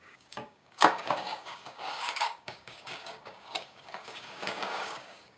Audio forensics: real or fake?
fake